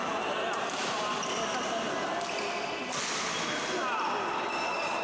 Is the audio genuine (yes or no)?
yes